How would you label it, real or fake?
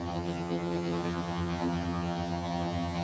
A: fake